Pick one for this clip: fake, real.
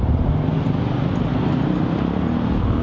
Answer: real